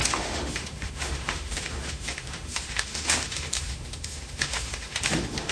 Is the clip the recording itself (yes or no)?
no